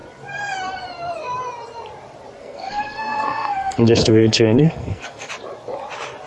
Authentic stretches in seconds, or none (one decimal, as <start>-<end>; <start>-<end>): 0.0-2.4; 5.3-6.3